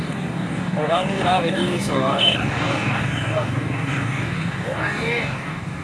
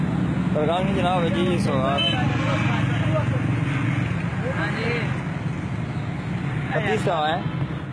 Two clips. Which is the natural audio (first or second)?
second